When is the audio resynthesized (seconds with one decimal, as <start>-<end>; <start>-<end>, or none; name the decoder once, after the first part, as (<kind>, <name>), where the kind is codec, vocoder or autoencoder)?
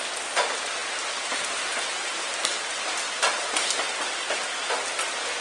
none